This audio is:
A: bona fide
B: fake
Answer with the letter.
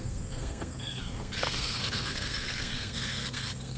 B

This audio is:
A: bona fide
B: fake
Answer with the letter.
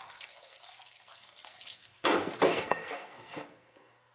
B